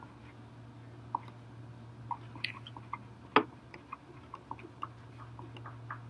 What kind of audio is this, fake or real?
real